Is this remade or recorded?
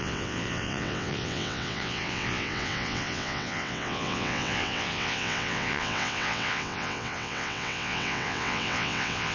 remade